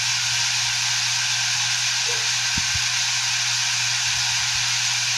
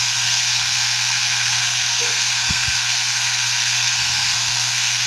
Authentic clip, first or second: first